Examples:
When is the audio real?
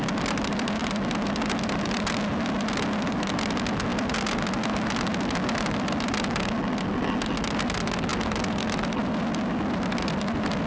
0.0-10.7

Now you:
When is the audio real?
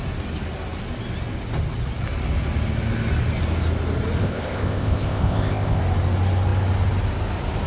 0.0-4.2; 5.8-7.7